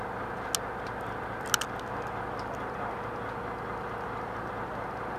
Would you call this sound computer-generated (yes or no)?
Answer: no